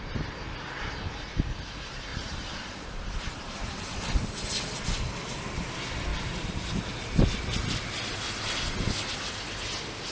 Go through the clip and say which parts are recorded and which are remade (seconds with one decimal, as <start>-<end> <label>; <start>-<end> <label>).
0.0-2.1 recorded; 2.1-4.0 remade; 4.0-6.1 recorded; 6.1-6.8 remade; 6.8-10.1 recorded